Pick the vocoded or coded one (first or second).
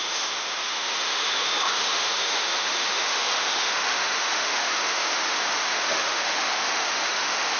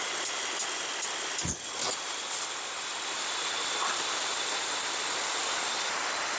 first